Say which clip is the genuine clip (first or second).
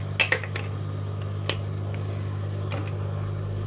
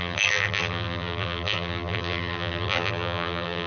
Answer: first